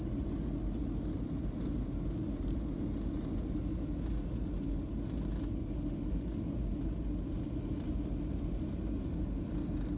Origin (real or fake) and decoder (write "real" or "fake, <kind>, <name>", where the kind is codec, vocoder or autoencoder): real